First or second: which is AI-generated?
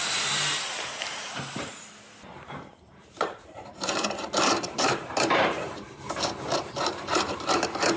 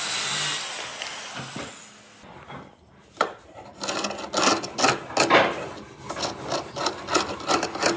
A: first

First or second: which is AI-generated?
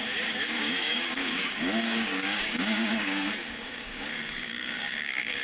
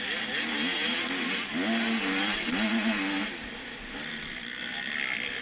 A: first